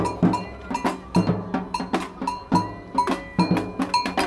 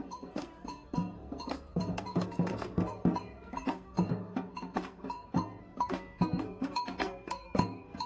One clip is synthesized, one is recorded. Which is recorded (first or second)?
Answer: first